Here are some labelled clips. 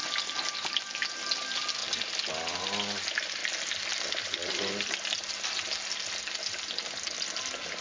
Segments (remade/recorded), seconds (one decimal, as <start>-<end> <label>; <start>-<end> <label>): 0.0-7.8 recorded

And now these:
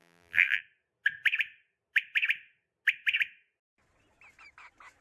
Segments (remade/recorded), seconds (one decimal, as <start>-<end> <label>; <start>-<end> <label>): 0.0-0.6 remade; 0.6-5.0 recorded

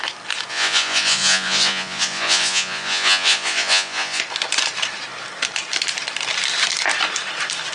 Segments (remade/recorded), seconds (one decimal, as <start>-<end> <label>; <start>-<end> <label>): 0.0-0.5 recorded; 0.5-4.2 remade; 4.2-7.7 recorded